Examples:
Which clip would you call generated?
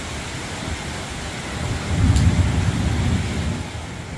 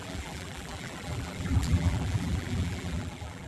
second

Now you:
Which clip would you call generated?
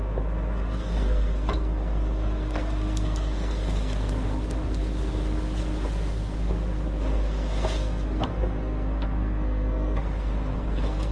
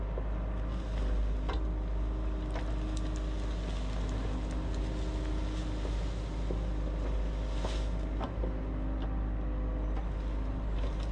first